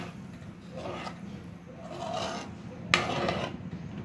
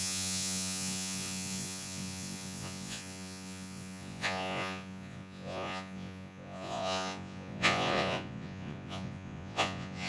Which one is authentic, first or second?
first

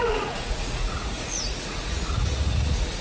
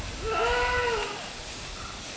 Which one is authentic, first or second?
second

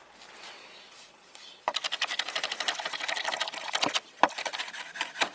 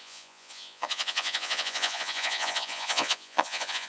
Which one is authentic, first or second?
first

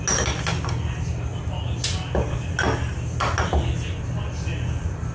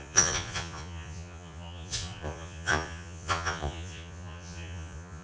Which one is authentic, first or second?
first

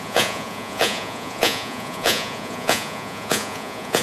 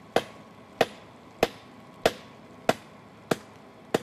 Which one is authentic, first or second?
second